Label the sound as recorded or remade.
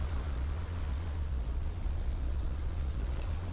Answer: remade